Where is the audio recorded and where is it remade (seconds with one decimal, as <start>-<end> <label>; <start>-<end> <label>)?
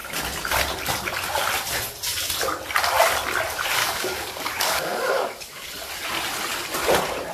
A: 0.0-3.8 recorded; 3.8-5.7 remade; 5.7-7.3 recorded